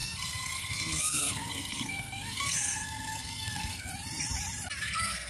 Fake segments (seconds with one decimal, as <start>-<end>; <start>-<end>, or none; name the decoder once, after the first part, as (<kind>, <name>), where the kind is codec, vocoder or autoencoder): 0.0-3.9 (codec, SNAC); 4.8-5.3